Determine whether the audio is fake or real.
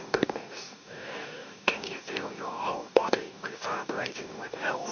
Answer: fake